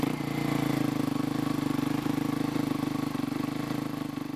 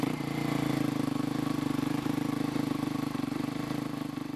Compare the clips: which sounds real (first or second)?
first